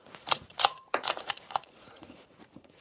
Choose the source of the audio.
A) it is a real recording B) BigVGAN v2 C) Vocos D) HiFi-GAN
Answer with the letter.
C